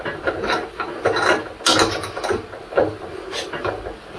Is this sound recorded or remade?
recorded